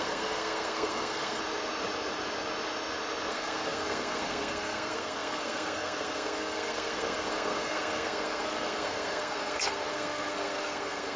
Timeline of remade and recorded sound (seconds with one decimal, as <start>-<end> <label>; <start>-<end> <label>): 0.0-1.4 remade; 1.4-3.3 recorded; 3.3-11.2 remade